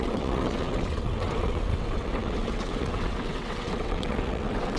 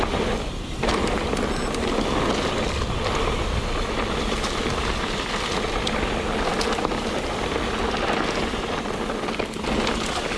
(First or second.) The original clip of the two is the second